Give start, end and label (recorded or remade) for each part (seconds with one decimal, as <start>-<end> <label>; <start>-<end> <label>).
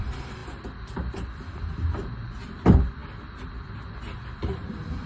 0.0-5.1 recorded